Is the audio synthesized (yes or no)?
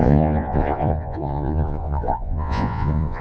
yes